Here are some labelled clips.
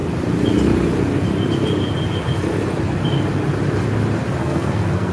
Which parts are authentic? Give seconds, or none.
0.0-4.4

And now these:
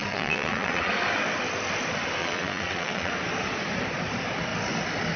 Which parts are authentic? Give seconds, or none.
0.9-2.2; 3.1-5.2

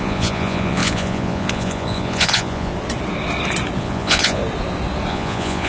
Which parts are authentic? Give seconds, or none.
2.7-3.8; 4.4-5.1

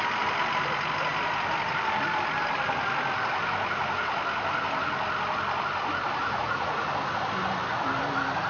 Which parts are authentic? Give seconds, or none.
0.0-6.2; 6.8-8.5

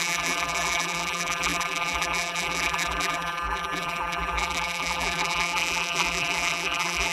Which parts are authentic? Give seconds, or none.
none

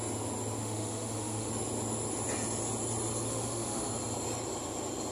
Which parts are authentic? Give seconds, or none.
0.0-0.6; 1.5-3.3; 3.9-5.1